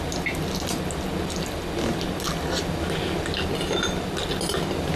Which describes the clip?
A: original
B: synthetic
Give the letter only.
A